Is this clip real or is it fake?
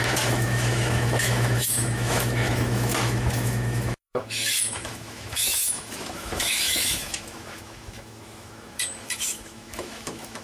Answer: fake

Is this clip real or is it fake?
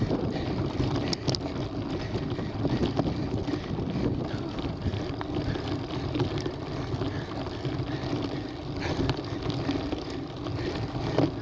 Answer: real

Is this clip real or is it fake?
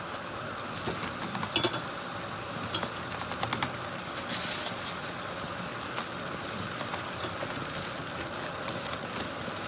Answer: real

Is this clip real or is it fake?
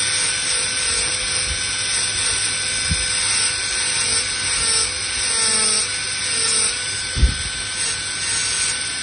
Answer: real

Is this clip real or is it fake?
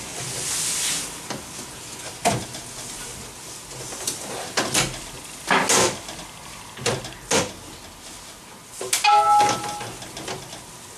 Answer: real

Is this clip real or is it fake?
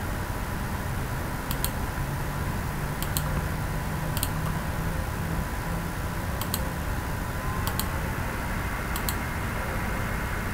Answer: real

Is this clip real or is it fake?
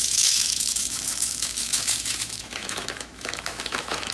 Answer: fake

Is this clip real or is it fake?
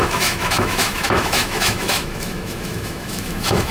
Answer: fake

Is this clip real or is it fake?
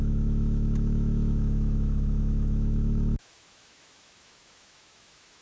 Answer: fake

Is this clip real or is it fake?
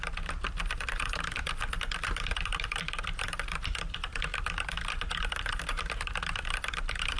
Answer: real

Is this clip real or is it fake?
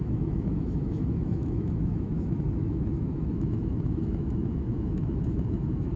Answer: fake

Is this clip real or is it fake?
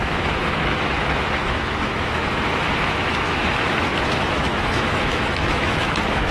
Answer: fake